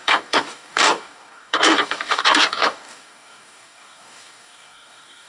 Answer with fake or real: fake